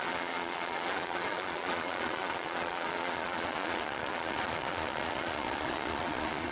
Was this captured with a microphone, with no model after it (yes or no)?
no